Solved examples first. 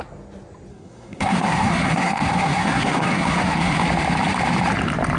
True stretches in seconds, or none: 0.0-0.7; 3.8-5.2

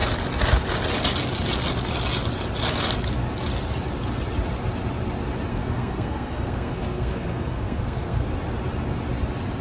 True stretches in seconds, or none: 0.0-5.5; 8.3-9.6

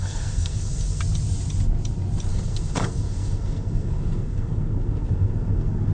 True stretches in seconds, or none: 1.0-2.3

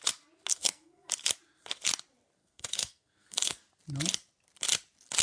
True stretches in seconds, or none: 0.0-0.5; 1.1-2.4; 3.6-5.2

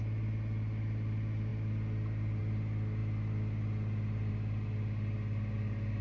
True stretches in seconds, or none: 0.0-6.0